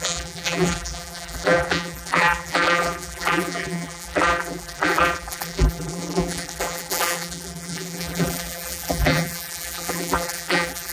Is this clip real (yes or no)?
no